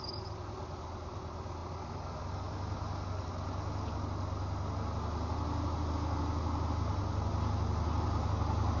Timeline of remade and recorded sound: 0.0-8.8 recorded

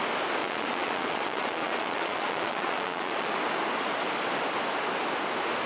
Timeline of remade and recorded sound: 0.0-0.4 recorded; 0.4-3.3 remade; 3.3-5.7 recorded

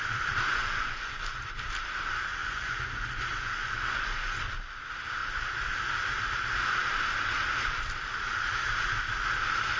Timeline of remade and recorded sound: 0.0-0.5 recorded; 0.5-1.4 remade; 1.4-2.4 recorded; 2.4-4.4 remade; 4.4-9.8 recorded

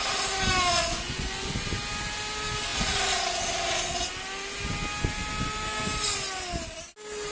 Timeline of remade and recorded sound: 0.0-0.7 recorded; 0.7-1.5 remade; 1.5-7.3 recorded

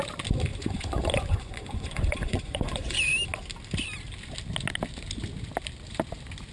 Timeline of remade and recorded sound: 0.0-0.5 recorded; 0.5-3.0 remade; 3.0-6.5 recorded

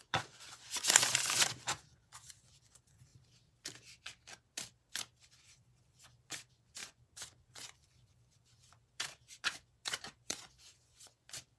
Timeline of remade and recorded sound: 0.0-3.1 remade; 3.1-5.4 recorded; 5.4-11.6 remade